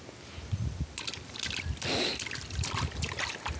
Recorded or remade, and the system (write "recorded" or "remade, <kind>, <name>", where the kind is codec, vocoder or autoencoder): recorded